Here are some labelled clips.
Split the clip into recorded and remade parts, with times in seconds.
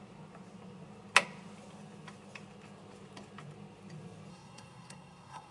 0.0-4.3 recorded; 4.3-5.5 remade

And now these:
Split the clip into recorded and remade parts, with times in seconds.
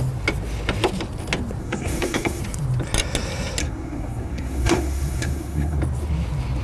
0.0-1.6 recorded; 1.6-2.4 remade; 2.4-3.6 recorded; 3.6-5.8 remade; 5.8-6.6 recorded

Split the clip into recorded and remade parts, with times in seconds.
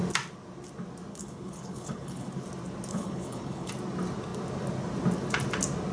0.0-1.1 recorded; 1.1-2.3 remade; 2.3-2.9 recorded; 2.9-3.7 remade; 3.7-5.9 recorded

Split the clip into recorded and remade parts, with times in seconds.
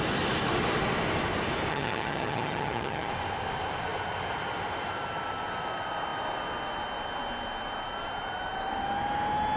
0.0-1.7 recorded; 1.7-3.1 remade; 3.1-9.6 recorded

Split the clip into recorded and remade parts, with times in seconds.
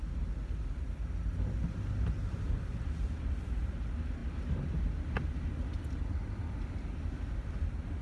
0.0-8.0 recorded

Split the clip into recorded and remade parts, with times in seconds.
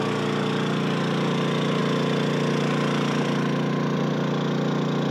0.0-5.1 recorded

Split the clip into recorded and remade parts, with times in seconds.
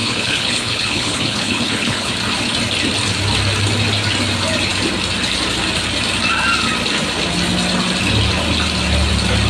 0.0-2.1 remade; 2.1-9.5 recorded